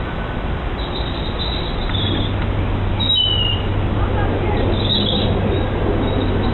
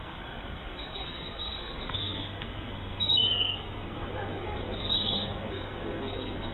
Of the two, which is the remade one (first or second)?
second